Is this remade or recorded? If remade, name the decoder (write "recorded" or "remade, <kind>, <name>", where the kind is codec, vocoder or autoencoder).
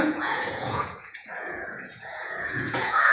remade, vocoder, Vocos